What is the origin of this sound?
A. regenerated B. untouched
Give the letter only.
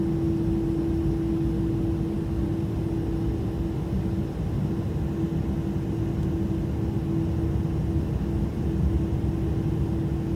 B